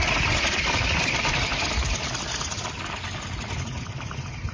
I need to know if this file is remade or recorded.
recorded